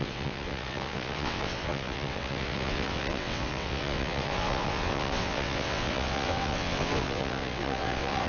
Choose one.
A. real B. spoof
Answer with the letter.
B